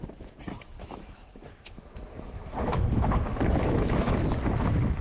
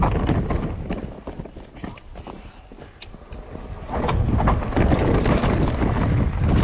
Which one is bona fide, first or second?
second